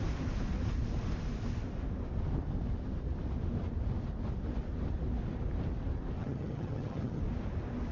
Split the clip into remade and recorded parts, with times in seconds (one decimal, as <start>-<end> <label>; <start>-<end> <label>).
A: 0.0-6.2 recorded; 6.2-7.2 remade; 7.2-7.9 recorded